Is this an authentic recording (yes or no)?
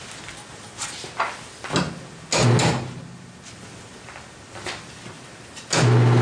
yes